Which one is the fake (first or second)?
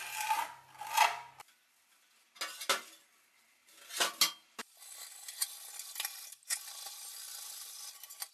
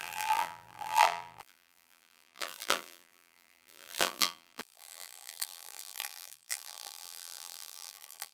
second